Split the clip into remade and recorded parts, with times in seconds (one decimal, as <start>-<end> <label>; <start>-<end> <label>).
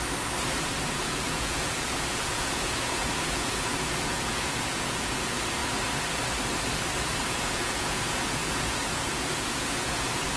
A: 0.0-0.9 recorded; 0.9-5.6 remade; 5.6-7.3 recorded; 7.3-10.4 remade